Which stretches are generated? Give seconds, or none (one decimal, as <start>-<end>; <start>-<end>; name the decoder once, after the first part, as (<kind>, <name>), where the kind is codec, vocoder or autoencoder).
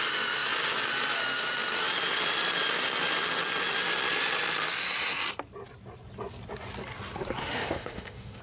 7.4-8.4 (autoencoder, DAC-VAE)